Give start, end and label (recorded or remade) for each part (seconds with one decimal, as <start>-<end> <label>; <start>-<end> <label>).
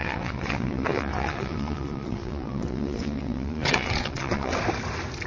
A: 0.0-4.5 remade; 4.5-5.3 recorded